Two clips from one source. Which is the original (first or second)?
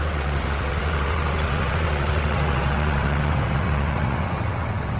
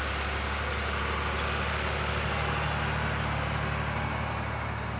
second